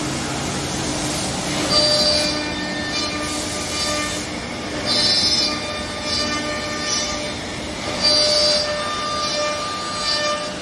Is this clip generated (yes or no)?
no